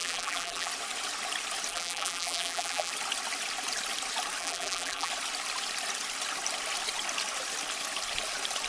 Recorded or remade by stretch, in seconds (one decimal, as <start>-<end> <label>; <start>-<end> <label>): 0.0-0.7 remade; 0.7-1.7 recorded; 1.7-2.9 remade; 2.9-4.4 recorded; 4.4-5.1 remade; 5.1-8.7 recorded